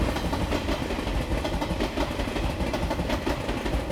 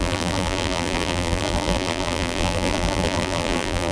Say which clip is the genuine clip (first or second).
first